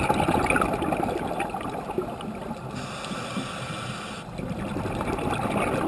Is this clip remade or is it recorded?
recorded